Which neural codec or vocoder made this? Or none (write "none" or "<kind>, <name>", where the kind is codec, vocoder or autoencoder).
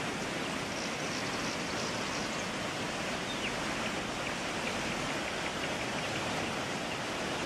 vocoder, BigVGAN v2